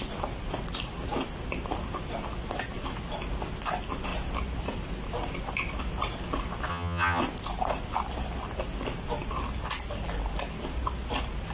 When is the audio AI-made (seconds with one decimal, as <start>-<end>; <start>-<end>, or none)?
6.7-7.2